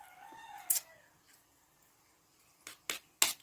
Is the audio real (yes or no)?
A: yes